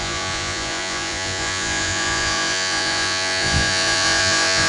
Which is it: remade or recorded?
remade